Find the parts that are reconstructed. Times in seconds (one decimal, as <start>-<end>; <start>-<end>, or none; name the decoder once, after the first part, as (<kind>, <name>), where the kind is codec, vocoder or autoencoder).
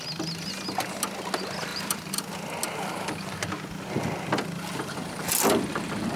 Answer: 1.7-2.3 (vocoder, BigVGAN v2)